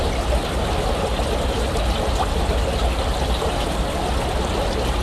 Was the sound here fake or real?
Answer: real